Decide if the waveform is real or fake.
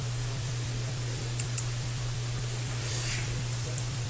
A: fake